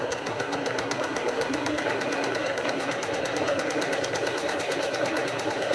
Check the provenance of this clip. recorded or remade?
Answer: remade